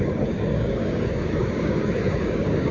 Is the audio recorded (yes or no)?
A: no